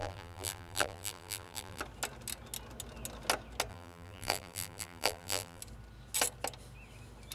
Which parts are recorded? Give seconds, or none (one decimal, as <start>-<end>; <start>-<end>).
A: 1.8-3.7; 5.6-7.3